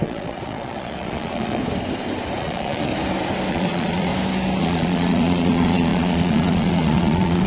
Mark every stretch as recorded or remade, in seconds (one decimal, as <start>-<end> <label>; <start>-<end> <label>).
0.0-1.6 remade; 1.6-2.4 recorded; 2.4-2.9 remade; 2.9-3.5 recorded; 3.5-4.1 remade; 4.1-4.6 recorded; 4.6-7.5 remade